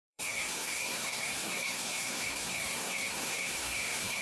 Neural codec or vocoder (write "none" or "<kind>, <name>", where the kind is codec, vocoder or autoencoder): codec, SNAC